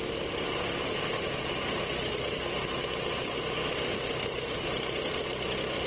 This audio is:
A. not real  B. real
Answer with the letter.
B